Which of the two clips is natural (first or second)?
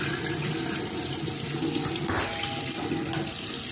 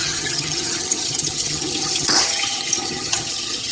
first